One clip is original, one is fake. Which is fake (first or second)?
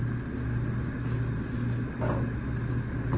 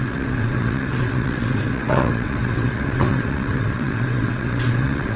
second